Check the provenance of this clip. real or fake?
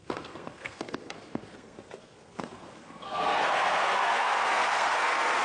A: fake